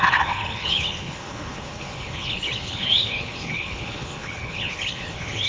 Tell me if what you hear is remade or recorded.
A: remade